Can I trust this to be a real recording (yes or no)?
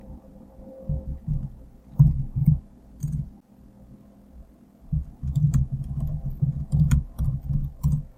yes